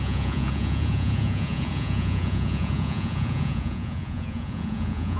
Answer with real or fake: fake